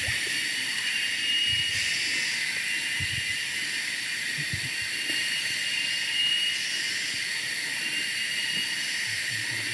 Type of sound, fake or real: real